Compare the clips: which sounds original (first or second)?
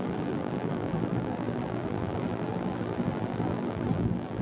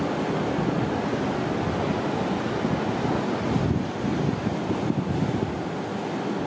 second